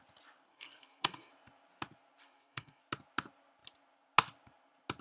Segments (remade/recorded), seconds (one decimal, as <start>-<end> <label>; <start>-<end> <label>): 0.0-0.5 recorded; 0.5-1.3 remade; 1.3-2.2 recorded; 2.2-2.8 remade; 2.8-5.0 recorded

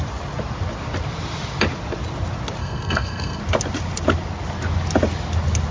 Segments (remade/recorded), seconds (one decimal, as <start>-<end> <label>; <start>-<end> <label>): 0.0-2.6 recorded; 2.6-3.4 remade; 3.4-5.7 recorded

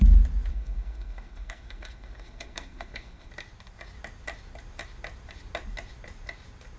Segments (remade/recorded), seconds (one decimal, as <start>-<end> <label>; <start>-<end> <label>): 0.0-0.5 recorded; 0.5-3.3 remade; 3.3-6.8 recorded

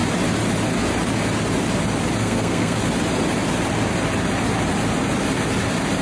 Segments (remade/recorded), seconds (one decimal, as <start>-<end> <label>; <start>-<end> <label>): 0.0-2.2 recorded; 2.2-2.8 remade; 2.8-6.0 recorded

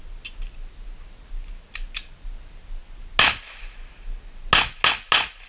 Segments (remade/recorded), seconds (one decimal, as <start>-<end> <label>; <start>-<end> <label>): 0.0-5.5 recorded

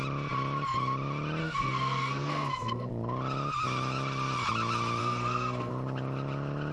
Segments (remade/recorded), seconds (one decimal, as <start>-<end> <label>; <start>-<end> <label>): 0.0-1.4 recorded; 1.4-2.9 remade; 2.9-5.0 recorded; 5.0-5.7 remade; 5.7-6.7 recorded

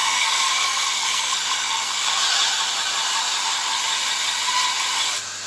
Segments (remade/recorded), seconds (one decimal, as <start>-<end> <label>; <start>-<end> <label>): 0.0-2.2 remade; 2.2-5.5 recorded